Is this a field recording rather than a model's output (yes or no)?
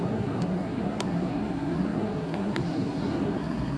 no